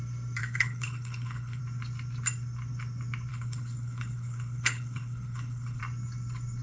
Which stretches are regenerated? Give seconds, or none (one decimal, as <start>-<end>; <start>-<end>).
0.4-1.6; 3.3-5.8